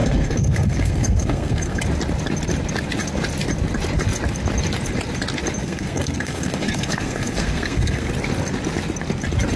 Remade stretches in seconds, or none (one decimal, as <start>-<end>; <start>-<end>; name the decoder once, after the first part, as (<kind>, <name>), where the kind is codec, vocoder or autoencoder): 0.0-1.8 (codec, SNAC); 5.6-8.1

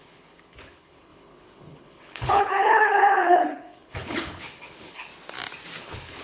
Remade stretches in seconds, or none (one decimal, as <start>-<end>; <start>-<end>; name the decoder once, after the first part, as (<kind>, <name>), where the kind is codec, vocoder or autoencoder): 0.0-5.1 (codec, HILCodec); 5.8-6.2

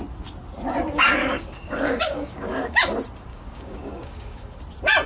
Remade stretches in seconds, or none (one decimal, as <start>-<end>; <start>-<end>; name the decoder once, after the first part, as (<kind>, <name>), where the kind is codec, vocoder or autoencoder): 1.2-2.8 (codec, DAC); 3.3-4.6

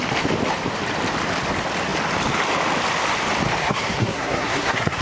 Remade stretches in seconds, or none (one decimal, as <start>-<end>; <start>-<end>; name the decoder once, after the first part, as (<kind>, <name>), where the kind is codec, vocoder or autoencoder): 3.6-5.0 (codec, SNAC)

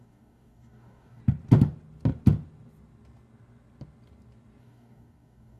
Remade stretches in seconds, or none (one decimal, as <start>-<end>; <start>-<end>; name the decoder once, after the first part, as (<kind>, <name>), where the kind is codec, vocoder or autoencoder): 0.0-1.2 (codec, DAC); 4.6-5.6

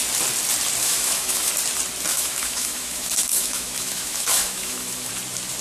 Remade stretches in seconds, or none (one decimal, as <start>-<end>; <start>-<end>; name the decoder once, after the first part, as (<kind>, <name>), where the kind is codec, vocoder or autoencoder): 0.8-1.5 (autoencoder, DAC-VAE); 2.1-5.1

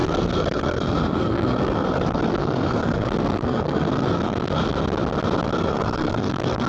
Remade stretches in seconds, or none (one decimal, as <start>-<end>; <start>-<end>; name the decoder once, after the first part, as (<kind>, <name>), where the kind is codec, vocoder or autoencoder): 0.0-4.6 (codec, SNAC); 5.5-6.7